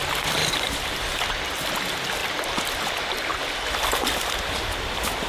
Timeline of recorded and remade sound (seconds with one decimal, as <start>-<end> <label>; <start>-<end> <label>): 0.0-5.3 recorded